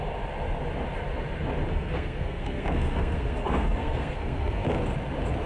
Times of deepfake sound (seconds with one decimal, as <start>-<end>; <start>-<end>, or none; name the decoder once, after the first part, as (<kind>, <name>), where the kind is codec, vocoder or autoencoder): 1.7-4.7 (codec, SNAC)